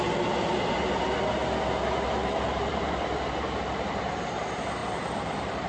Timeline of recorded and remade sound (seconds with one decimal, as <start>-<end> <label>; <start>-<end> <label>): 0.0-2.2 recorded; 2.2-4.3 remade; 4.3-4.8 recorded; 4.8-5.7 remade